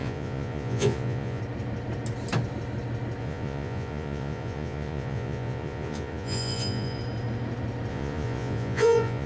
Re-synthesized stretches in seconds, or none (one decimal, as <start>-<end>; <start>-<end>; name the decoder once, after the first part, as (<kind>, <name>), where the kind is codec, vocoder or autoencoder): 0.0-1.4 (vocoder, Vocos); 3.2-7.0; 7.9-9.3

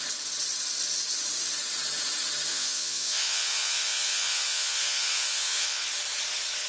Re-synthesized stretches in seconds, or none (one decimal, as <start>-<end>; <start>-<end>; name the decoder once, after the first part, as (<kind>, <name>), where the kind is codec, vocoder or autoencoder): 2.5-5.8 (vocoder, Vocos)

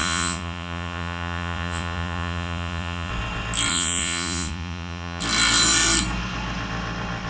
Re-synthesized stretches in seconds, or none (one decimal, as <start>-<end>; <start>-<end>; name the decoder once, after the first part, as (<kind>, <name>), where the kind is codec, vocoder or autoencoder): 0.0-3.1 (vocoder, Vocos); 3.7-5.2

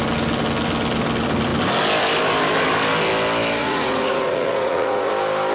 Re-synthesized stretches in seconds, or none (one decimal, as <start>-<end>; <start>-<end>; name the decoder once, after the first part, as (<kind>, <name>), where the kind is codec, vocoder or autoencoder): 3.6-5.1 (vocoder, Vocos)

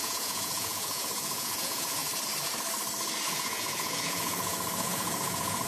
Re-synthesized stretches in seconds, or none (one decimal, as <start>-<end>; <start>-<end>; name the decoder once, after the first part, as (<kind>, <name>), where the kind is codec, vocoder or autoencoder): 0.0-2.0 (vocoder, Vocos); 3.3-5.7